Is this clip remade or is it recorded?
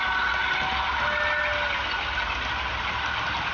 recorded